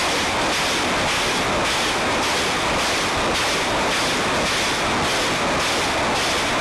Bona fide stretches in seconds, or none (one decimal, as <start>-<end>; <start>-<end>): 0.0-6.6